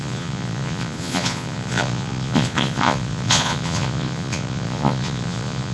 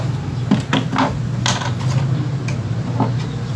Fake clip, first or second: first